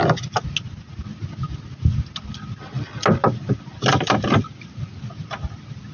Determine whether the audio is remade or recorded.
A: recorded